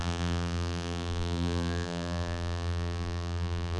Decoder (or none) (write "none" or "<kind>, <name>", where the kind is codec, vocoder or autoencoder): vocoder, BigVGAN v2